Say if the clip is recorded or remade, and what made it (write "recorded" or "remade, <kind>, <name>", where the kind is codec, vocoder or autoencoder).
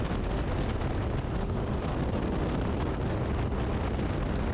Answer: recorded